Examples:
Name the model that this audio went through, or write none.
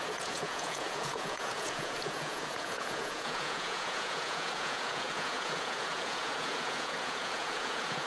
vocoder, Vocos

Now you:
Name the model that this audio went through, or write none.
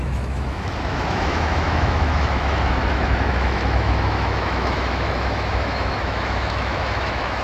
autoencoder, DAC-VAE